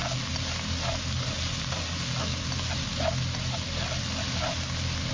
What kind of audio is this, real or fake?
real